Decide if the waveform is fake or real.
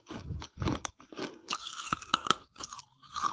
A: fake